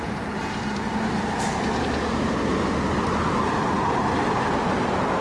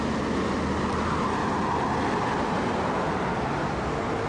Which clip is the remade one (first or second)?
first